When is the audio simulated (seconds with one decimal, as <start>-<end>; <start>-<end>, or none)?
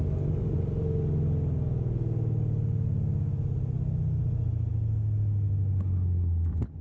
none